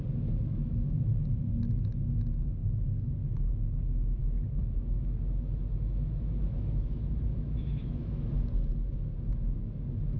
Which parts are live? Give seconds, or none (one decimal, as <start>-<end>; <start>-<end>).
0.0-0.5; 1.1-4.2; 8.3-10.2